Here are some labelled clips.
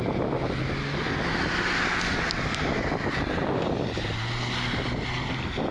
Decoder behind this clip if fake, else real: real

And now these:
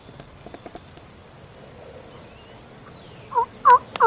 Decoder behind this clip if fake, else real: real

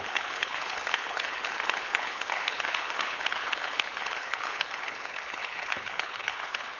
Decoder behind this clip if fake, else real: fake, codec, HILCodec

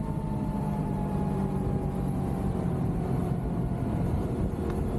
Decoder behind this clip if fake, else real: real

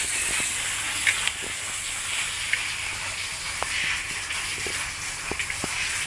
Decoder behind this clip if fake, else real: real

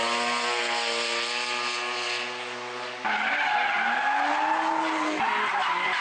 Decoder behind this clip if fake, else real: real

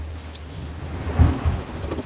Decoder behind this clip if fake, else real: real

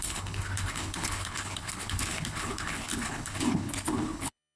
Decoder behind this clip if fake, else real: fake, codec, HILCodec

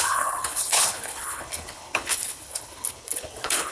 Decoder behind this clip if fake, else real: fake, codec, HILCodec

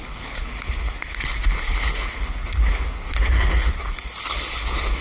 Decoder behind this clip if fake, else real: fake, codec, HILCodec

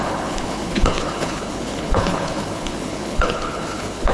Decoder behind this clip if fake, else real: fake, codec, HILCodec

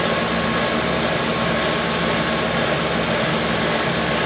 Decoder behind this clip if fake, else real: real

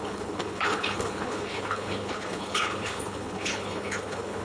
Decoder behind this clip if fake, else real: fake, codec, HILCodec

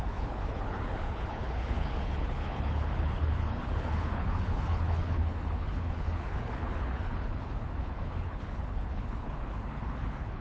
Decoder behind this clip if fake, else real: fake, codec, HILCodec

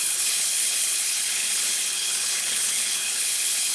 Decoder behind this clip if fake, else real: fake, codec, HILCodec